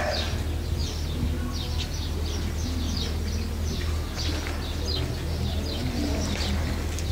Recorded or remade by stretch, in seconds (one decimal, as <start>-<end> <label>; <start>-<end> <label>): 0.0-7.1 recorded